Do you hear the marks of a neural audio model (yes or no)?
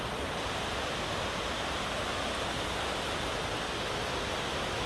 no